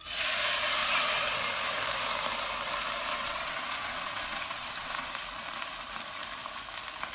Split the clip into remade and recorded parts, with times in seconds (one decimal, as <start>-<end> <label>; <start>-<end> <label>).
0.0-0.8 recorded; 0.8-1.4 remade; 1.4-3.1 recorded; 3.1-5.1 remade; 5.1-7.1 recorded